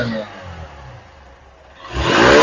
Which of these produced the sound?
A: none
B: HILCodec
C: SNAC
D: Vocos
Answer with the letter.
A